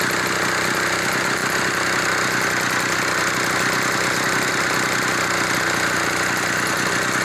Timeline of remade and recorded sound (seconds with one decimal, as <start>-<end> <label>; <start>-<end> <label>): 0.0-7.2 recorded